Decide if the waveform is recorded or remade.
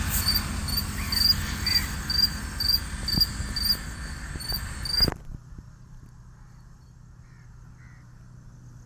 recorded